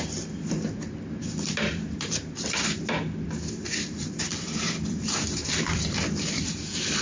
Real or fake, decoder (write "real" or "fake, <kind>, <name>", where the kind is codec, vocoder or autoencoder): fake, vocoder, BigVGAN v2